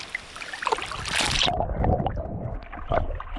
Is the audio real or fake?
real